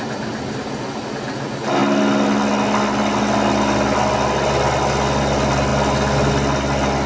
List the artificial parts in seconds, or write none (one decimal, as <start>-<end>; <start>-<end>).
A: none